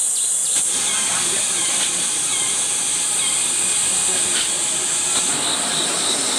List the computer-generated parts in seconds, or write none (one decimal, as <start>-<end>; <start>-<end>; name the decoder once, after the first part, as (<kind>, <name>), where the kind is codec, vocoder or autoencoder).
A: none